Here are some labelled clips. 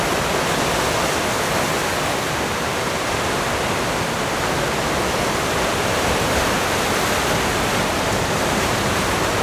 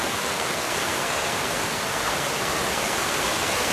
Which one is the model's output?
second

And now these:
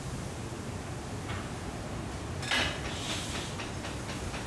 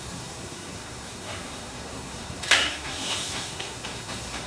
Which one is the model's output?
second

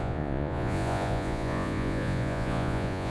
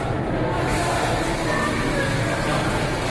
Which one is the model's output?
first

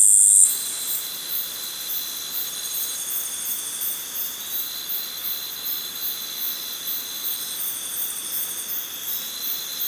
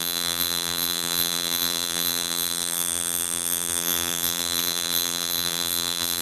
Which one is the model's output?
second